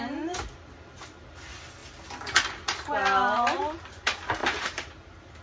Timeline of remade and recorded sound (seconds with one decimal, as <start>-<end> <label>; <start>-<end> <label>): 0.0-4.4 recorded; 4.4-4.9 remade; 4.9-5.4 recorded